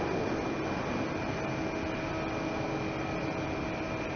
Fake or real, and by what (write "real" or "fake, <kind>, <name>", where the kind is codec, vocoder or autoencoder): real